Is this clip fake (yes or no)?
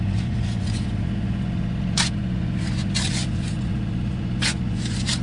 yes